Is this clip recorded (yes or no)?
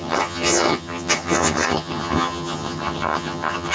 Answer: no